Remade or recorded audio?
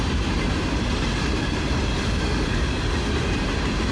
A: recorded